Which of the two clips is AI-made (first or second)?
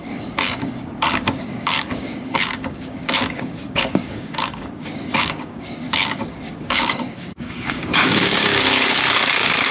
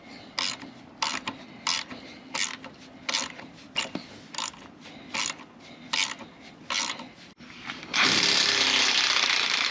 first